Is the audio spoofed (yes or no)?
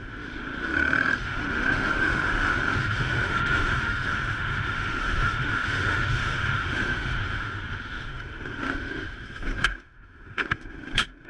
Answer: yes